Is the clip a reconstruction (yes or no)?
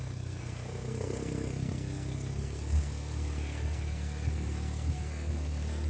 yes